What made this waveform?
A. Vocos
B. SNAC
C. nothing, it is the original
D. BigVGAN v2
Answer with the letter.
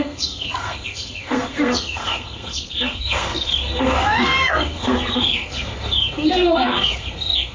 B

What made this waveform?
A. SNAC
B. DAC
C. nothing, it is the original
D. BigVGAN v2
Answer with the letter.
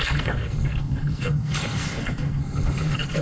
A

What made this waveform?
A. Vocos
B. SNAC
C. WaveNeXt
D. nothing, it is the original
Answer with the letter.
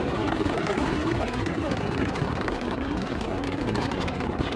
B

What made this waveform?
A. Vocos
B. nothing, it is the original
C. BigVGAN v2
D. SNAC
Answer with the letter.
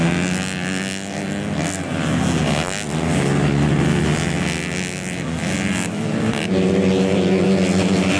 B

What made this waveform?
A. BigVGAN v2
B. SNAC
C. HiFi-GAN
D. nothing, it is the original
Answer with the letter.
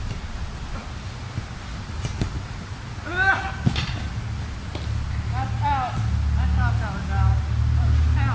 D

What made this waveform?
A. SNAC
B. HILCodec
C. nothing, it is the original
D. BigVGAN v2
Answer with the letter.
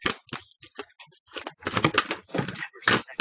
C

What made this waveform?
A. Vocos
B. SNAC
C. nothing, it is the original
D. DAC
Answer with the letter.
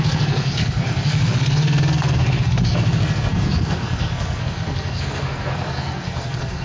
B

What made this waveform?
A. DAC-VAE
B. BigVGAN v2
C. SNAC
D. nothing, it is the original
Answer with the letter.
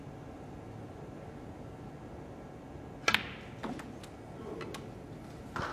D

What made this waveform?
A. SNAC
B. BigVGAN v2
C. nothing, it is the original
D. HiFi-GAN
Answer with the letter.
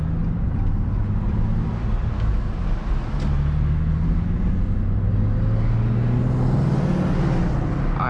C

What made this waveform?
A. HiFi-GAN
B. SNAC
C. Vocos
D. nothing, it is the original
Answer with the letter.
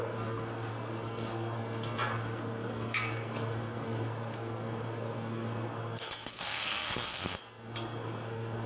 B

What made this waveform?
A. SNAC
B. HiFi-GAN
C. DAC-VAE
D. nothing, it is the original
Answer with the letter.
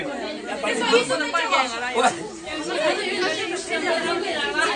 D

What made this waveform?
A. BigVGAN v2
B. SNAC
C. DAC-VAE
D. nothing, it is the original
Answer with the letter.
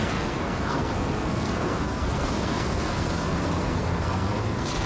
B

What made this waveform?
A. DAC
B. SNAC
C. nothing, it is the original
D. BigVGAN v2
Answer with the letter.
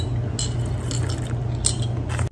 C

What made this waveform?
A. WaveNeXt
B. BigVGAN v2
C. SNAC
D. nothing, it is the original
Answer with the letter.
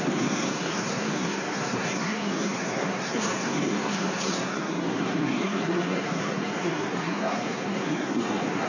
C